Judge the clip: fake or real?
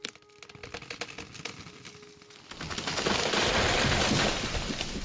real